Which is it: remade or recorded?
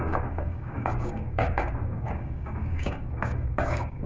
remade